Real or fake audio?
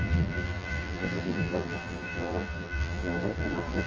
fake